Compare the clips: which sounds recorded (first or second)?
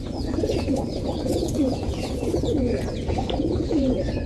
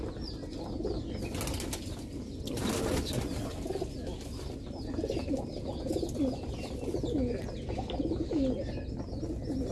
second